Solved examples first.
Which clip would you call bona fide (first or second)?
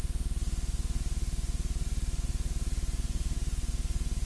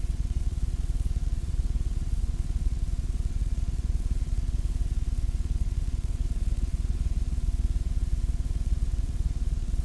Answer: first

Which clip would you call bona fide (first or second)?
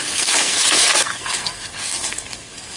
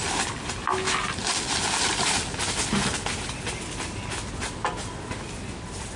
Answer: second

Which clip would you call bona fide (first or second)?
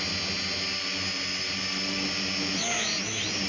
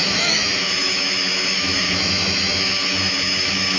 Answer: first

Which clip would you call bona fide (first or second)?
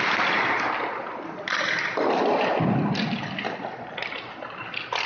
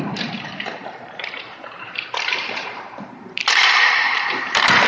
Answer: first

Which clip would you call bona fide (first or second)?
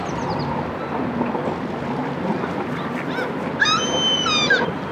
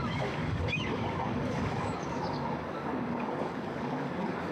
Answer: first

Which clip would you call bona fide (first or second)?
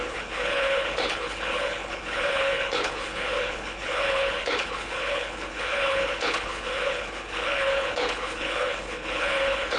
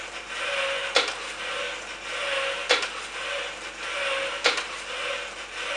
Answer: second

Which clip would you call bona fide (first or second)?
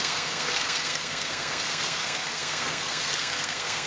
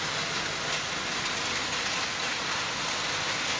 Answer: second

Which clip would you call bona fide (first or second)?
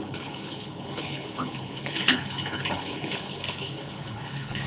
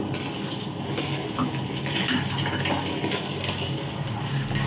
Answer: second